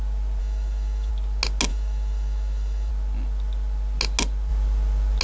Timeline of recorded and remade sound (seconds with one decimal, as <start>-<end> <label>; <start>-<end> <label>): 0.0-0.4 recorded; 0.4-1.1 remade; 1.1-1.7 recorded; 1.7-2.9 remade; 2.9-5.2 recorded